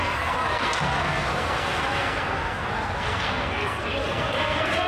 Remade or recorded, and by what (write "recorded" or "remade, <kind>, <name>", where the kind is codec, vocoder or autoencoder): remade, codec, SNAC